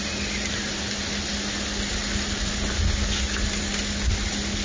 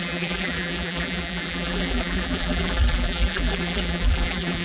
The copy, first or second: second